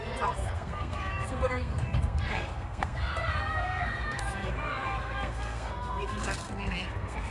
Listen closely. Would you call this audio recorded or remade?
remade